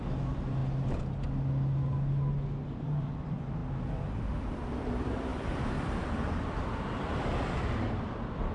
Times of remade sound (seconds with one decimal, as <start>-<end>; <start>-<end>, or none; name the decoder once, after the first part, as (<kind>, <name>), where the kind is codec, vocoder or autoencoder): 0.0-0.6 (vocoder, BigVGAN v2); 2.7-8.5